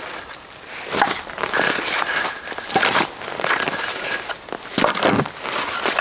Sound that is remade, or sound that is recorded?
recorded